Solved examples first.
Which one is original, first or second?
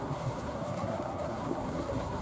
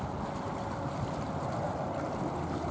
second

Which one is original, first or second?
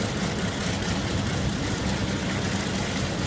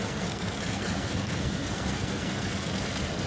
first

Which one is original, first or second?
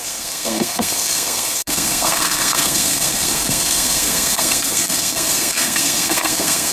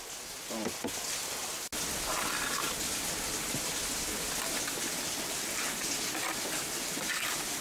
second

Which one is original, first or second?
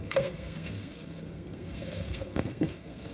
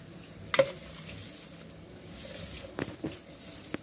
second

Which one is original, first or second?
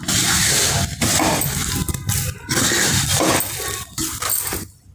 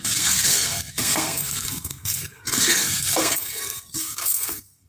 first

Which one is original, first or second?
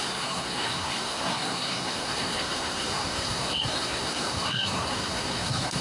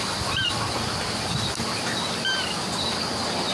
second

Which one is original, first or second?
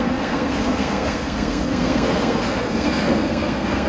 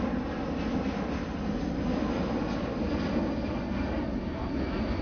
second